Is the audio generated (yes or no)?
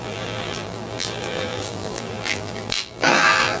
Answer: yes